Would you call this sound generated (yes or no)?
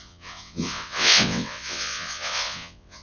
yes